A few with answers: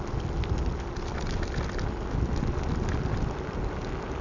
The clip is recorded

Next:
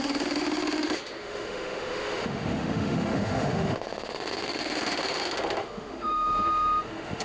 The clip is remade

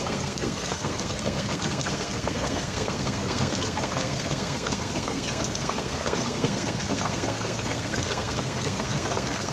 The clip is remade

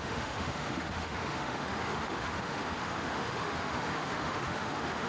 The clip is remade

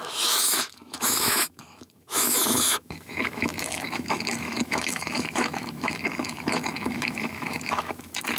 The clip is remade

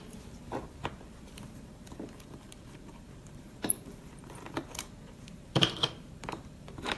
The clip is remade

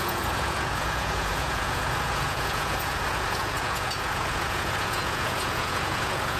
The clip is remade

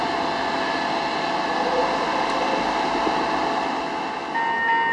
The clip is recorded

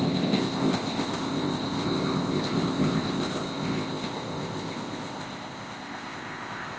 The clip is remade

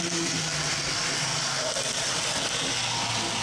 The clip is recorded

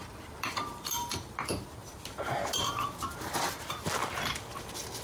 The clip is remade